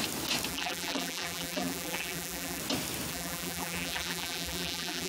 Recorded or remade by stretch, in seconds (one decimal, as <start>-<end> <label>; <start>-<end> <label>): 0.0-0.5 recorded; 0.5-2.6 remade; 2.6-3.1 recorded; 3.1-5.1 remade